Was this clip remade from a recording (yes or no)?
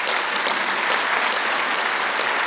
no